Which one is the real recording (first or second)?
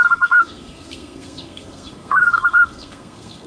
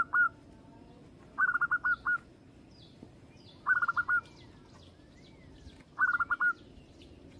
second